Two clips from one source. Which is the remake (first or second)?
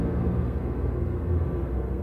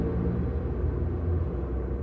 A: first